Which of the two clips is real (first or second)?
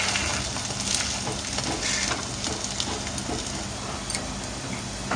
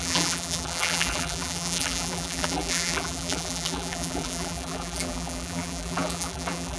first